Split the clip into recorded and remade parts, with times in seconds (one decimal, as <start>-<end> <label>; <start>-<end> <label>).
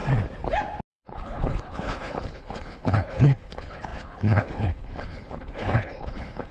0.0-0.9 recorded; 0.9-6.5 remade